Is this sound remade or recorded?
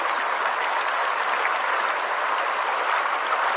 recorded